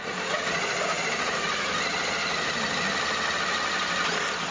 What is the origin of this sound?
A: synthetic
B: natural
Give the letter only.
B